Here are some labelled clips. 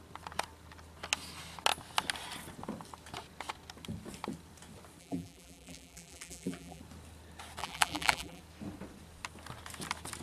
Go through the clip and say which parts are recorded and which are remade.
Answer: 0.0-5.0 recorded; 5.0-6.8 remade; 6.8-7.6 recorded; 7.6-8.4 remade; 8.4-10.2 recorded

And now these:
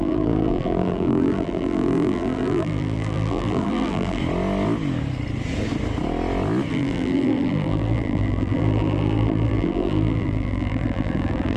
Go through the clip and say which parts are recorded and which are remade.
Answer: 0.0-4.2 remade; 4.2-6.7 recorded; 6.7-11.6 remade

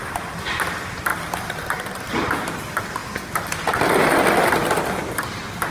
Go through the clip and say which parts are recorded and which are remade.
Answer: 0.0-1.1 recorded; 1.1-2.0 remade; 2.0-3.0 recorded; 3.0-3.5 remade; 3.5-5.7 recorded

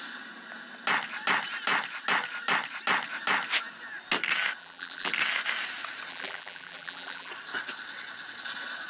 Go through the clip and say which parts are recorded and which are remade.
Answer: 0.0-4.6 recorded; 4.6-5.1 remade; 5.1-6.1 recorded; 6.1-7.3 remade; 7.3-8.9 recorded

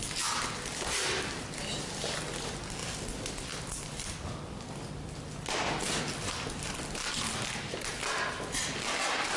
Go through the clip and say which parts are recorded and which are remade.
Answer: 0.0-2.8 recorded; 2.8-4.6 remade; 4.6-9.4 recorded

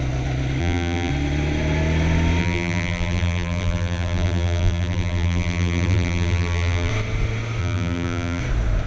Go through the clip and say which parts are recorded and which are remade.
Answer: 0.0-0.6 recorded; 0.6-1.1 remade; 1.1-2.4 recorded; 2.4-6.9 remade; 6.9-7.6 recorded; 7.6-8.4 remade; 8.4-8.9 recorded

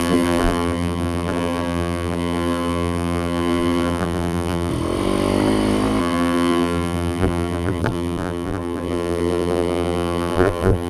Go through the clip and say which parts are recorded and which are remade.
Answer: 0.0-4.7 remade; 4.7-6.0 recorded; 6.0-10.9 remade

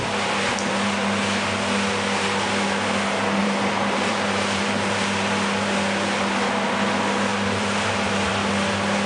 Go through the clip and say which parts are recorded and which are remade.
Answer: 0.0-3.4 recorded; 3.4-5.0 remade; 5.0-7.3 recorded; 7.3-8.3 remade; 8.3-9.1 recorded